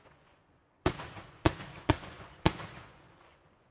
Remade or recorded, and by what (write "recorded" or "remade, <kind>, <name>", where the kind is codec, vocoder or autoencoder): remade, vocoder, Vocos